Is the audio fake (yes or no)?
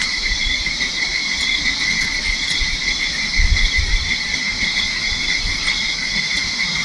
no